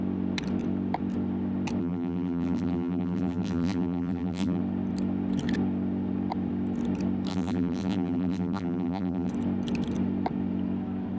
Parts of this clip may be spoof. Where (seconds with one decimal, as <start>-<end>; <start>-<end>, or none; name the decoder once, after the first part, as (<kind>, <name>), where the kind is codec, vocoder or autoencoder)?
1.8-4.6 (vocoder, BigVGAN v2); 7.3-9.3